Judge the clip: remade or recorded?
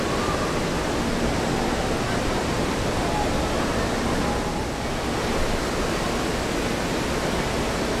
recorded